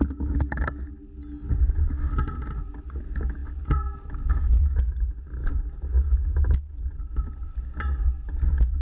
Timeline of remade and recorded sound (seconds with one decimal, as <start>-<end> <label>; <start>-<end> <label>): 0.0-8.8 recorded

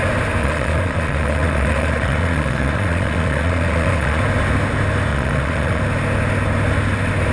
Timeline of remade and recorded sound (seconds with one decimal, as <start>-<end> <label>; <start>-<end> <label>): 0.0-0.4 recorded; 0.4-4.2 remade; 4.2-5.1 recorded; 5.1-5.8 remade; 5.8-7.3 recorded

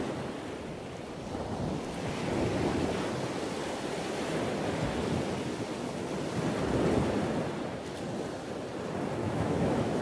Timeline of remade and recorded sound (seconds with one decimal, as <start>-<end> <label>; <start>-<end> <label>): 0.0-9.2 recorded; 9.2-10.0 remade

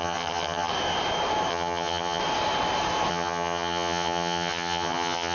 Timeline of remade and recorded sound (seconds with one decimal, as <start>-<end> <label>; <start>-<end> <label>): 0.0-0.7 remade; 0.7-1.5 recorded; 1.5-2.2 remade; 2.2-3.1 recorded; 3.1-5.3 remade

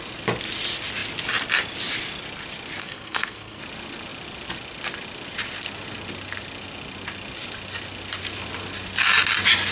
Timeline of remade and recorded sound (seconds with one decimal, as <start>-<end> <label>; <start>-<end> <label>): 0.0-2.8 recorded; 2.8-3.6 remade; 3.6-9.7 recorded

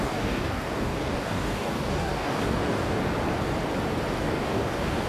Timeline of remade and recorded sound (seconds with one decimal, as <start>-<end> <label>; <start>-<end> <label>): 0.0-3.0 remade; 3.0-4.2 recorded; 4.2-5.1 remade